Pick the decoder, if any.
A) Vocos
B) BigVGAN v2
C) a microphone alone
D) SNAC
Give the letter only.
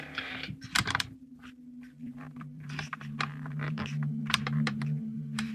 B